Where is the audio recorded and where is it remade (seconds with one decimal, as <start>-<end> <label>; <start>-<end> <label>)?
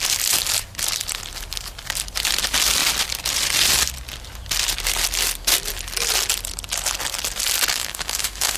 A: 0.0-7.7 recorded; 7.7-8.6 remade